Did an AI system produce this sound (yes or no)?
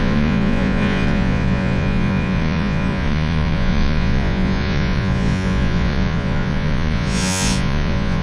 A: yes